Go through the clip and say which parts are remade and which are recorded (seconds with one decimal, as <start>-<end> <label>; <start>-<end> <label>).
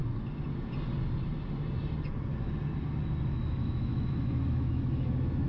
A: 0.0-3.3 recorded; 3.3-5.5 remade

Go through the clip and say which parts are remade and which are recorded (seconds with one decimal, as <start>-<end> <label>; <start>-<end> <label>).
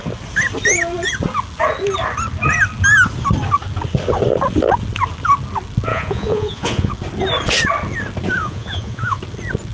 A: 0.0-5.9 recorded; 5.9-6.9 remade; 6.9-8.4 recorded; 8.4-9.2 remade; 9.2-9.7 recorded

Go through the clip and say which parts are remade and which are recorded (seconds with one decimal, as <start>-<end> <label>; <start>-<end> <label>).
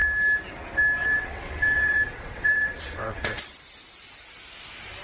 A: 0.0-1.0 recorded; 1.0-3.6 remade; 3.6-5.0 recorded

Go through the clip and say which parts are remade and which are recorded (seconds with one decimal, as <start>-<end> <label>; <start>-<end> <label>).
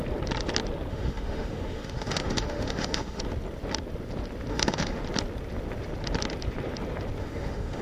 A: 0.0-0.9 recorded; 0.9-3.2 remade; 3.2-4.5 recorded; 4.5-5.0 remade; 5.0-7.2 recorded; 7.2-7.8 remade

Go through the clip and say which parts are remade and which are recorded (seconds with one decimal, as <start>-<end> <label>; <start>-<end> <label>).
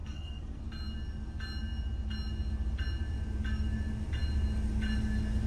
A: 0.0-0.6 remade; 0.6-5.5 recorded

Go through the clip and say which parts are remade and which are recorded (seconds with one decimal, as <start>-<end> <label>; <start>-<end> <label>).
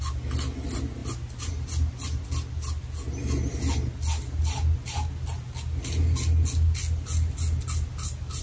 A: 0.0-8.4 recorded